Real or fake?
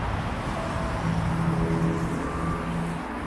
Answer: real